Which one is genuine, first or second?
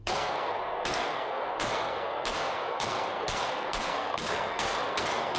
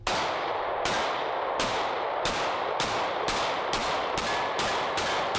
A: second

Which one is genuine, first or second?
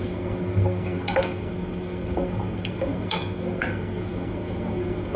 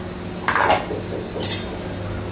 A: second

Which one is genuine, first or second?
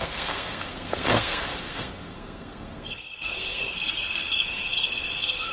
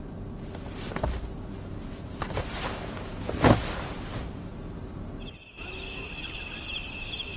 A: second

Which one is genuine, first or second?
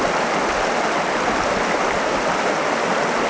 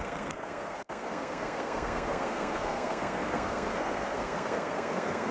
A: first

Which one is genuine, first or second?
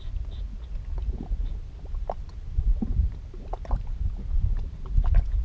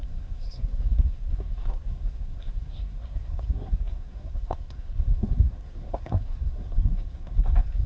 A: first